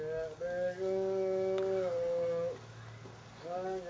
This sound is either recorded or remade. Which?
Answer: remade